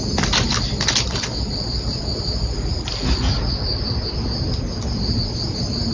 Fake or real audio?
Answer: real